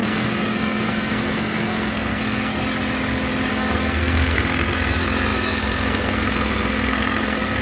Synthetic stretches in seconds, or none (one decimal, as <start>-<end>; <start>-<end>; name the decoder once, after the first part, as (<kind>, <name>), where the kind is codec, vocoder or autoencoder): 0.0-2.6 (codec, SNAC); 3.5-7.6